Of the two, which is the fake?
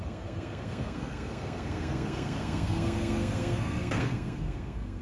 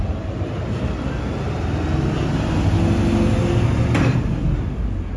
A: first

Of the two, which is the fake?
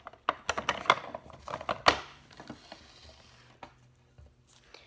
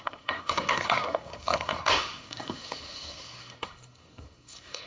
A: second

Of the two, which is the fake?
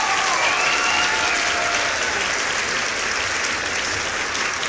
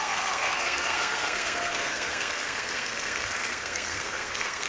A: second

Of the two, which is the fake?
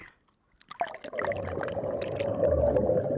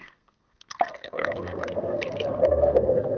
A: second